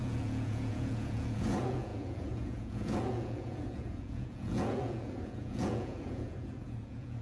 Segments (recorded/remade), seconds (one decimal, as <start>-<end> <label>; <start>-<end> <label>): 0.0-7.2 remade